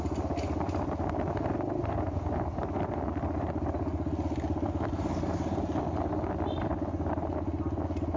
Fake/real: real